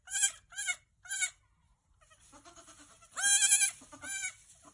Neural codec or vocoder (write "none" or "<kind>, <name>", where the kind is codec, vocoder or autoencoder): vocoder, BigVGAN v2